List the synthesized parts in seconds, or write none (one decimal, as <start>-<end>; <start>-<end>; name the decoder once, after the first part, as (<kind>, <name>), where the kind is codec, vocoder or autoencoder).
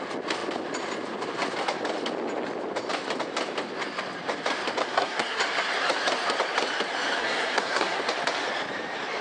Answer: 4.8-5.4 (codec, SNAC); 7.2-8.0